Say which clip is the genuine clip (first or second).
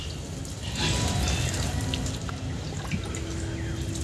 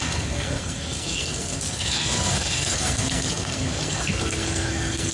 first